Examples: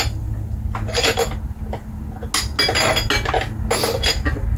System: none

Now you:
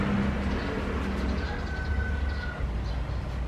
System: none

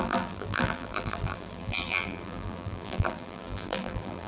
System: vocoder, BigVGAN v2